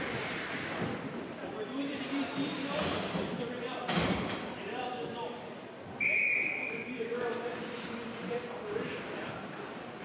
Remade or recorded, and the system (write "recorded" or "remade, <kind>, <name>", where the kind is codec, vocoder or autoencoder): remade, vocoder, BigVGAN v2